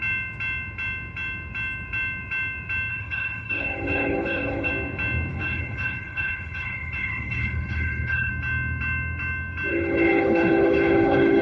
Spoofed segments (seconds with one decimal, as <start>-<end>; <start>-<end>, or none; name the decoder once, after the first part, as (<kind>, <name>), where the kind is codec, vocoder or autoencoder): 2.9-4.7 (codec, HILCodec); 5.3-8.3; 9.7-11.4